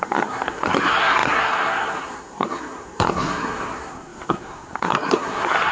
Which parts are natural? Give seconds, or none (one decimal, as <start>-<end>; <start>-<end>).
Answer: none